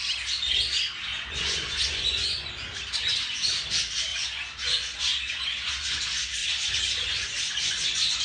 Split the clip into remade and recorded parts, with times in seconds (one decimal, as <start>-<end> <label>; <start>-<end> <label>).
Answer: 0.0-1.1 recorded; 1.1-2.5 remade; 2.5-4.1 recorded; 4.1-6.0 remade; 6.0-6.4 recorded; 6.4-8.2 remade